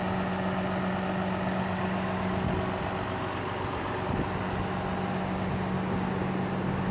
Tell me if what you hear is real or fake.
real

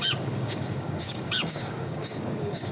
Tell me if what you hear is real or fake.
fake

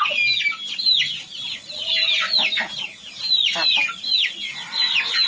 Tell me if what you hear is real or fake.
real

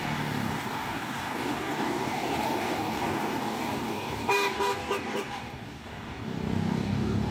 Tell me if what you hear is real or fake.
fake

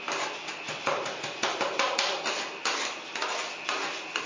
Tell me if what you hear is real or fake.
real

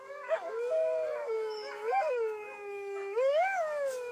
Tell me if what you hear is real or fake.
fake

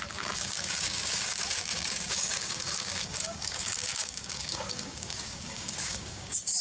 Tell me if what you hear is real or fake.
fake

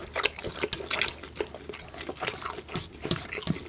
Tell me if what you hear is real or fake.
real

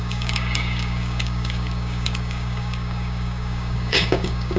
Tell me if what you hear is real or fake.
fake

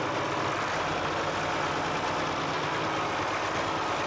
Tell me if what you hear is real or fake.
real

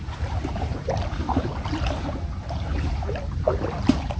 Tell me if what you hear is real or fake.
real